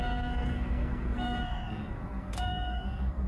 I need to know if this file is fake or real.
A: fake